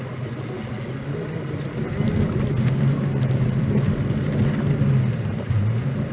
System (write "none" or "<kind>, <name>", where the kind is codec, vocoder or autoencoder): none